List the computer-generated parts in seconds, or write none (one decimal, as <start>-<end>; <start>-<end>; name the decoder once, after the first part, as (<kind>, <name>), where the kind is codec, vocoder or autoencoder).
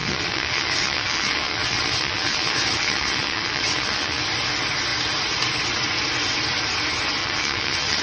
0.0-4.2 (vocoder, WaveNeXt); 7.2-8.0